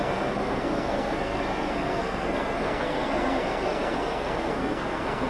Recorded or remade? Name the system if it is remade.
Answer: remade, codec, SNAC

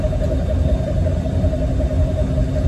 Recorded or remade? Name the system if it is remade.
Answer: recorded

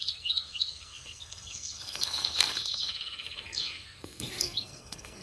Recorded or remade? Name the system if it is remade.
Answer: remade, codec, SNAC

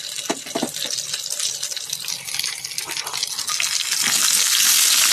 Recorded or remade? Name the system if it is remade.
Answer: recorded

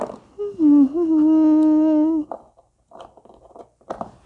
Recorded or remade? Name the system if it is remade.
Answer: recorded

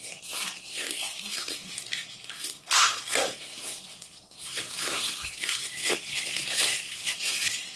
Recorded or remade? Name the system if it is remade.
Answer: remade, codec, SNAC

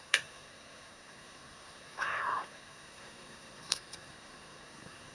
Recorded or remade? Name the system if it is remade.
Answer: remade, codec, SNAC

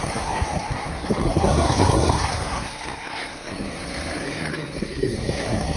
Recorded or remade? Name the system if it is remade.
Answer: remade, codec, SNAC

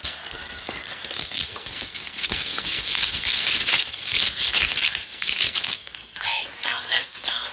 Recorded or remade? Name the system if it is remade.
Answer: remade, codec, SNAC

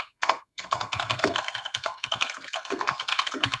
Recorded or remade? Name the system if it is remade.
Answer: remade, codec, SNAC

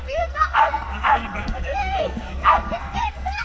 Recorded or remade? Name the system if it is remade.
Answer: remade, codec, SNAC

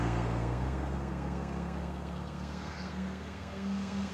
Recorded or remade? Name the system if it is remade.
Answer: remade, codec, SNAC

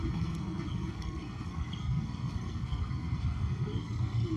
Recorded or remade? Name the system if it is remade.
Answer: remade, codec, SNAC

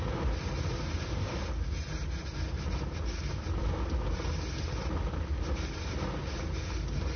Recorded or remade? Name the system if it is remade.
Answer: recorded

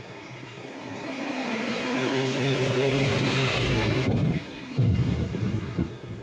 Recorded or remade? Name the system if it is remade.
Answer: remade, codec, SNAC